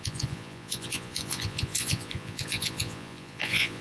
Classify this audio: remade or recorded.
remade